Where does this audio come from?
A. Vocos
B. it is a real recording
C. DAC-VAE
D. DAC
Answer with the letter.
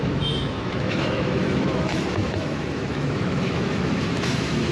C